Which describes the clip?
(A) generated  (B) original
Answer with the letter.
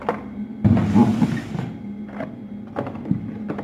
B